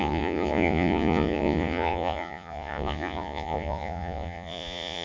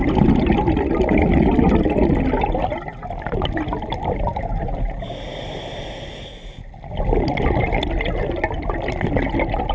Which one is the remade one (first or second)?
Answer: first